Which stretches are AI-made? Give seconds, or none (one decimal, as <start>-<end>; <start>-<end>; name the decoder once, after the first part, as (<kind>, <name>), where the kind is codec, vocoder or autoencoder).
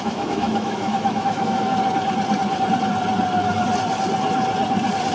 0.0-1.8 (autoencoder, DAC-VAE)